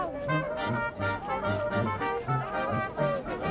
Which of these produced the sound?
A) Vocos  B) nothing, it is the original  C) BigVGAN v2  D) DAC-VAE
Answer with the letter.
B